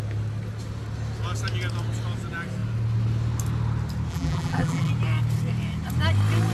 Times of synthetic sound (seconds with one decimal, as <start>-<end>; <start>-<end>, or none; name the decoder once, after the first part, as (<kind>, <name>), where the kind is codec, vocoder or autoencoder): 4.1-4.9 (vocoder, BigVGAN v2)